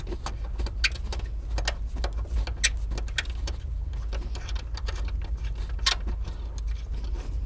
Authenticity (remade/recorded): recorded